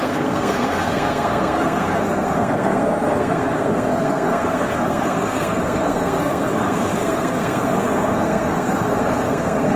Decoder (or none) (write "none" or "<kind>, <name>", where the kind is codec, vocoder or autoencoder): codec, SNAC